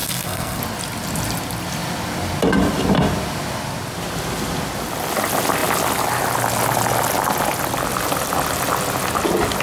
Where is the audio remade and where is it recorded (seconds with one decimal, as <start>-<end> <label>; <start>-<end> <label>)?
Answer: 0.0-0.6 remade; 0.6-9.6 recorded